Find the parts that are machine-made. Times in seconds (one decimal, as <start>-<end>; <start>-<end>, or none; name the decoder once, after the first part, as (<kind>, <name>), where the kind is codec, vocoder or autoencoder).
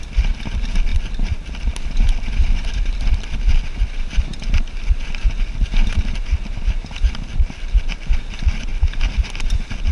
none